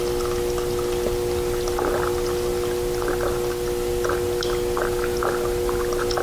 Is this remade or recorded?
recorded